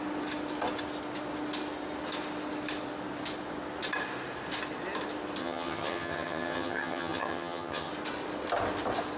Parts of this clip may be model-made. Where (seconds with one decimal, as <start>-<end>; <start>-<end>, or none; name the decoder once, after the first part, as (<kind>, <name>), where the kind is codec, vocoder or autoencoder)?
5.4-7.9 (vocoder, HiFi-GAN)